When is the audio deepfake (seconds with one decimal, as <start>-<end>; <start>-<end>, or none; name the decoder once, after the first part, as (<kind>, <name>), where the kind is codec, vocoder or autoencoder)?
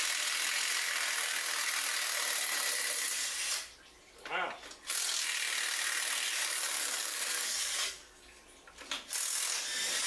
6.4-8.4 (codec, DAC)